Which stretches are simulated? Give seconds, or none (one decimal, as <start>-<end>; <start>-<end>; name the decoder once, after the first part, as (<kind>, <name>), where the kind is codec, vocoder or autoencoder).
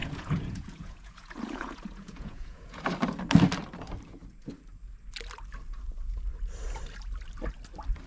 0.0-2.8 (vocoder, Vocos)